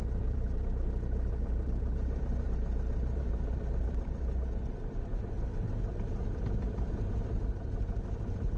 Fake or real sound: fake